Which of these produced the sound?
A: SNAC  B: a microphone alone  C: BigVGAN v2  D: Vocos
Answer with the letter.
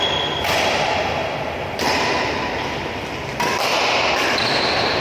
B